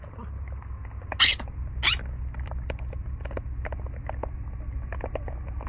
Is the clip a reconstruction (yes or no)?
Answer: no